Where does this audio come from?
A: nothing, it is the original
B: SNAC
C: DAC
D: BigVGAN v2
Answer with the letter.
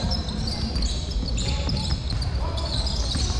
D